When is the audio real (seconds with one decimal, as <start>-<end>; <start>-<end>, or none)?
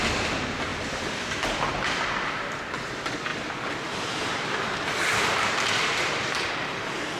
0.0-0.7; 1.3-3.3; 6.5-7.2